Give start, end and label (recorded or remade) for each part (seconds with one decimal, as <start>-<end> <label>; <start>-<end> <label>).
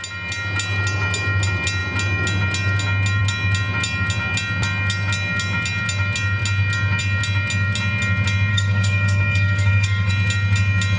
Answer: 0.0-8.5 recorded; 8.5-10.1 remade; 10.1-11.0 recorded